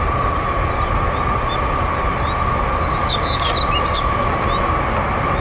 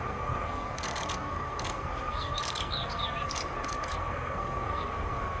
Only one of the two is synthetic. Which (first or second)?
second